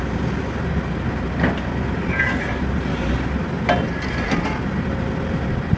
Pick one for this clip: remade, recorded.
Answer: recorded